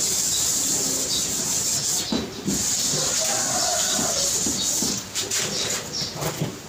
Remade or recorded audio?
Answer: recorded